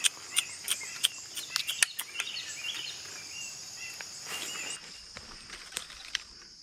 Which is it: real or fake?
real